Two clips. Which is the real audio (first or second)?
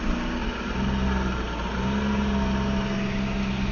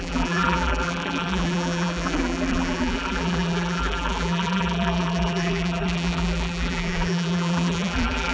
first